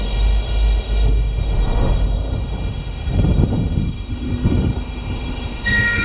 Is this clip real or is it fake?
fake